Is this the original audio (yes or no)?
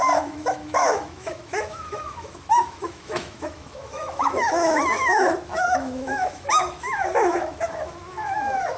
no